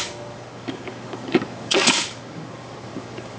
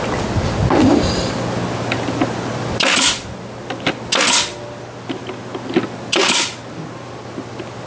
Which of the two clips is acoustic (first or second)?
second